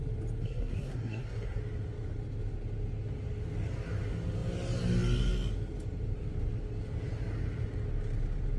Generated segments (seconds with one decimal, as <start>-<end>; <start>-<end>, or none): 0.4-1.6